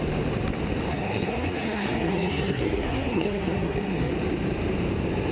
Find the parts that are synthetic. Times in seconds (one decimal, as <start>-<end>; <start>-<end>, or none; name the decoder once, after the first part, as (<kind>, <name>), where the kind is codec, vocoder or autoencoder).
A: 0.9-4.1 (codec, SNAC)